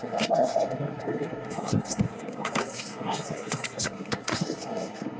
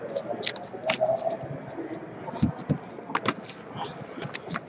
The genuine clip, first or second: second